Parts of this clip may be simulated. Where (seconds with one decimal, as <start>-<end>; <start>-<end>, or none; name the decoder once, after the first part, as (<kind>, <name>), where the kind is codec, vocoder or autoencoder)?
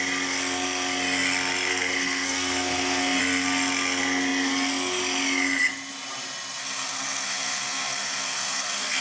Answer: 1.7-3.2 (codec, SNAC); 6.6-9.0